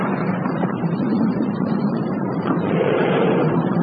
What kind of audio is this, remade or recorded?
remade